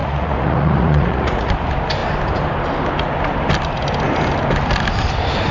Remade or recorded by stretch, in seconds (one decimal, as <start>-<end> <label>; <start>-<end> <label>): 0.0-1.5 remade; 1.5-5.5 recorded